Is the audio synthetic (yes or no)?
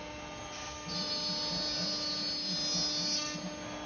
no